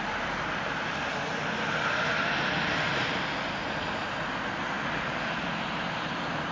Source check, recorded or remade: recorded